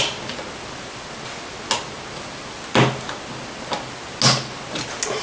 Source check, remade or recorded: recorded